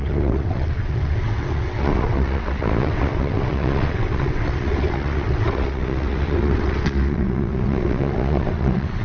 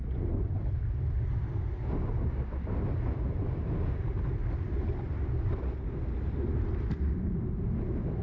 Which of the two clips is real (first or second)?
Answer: second